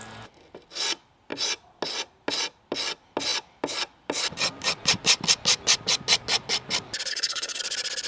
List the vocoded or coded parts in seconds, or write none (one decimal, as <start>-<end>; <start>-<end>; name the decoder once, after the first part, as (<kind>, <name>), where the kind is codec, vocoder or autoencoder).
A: 7.1-7.6 (codec, SNAC)